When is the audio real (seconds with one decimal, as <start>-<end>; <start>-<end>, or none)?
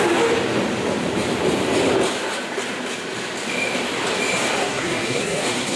0.0-4.6